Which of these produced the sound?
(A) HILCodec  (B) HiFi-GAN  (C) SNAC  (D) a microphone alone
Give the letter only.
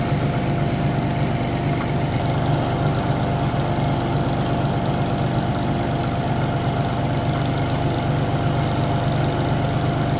D